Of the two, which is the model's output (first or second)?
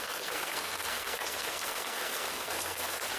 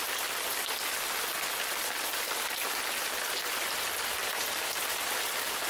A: first